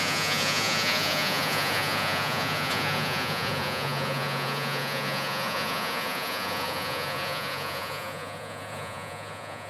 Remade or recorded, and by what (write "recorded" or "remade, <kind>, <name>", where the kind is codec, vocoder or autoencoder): remade, vocoder, Vocos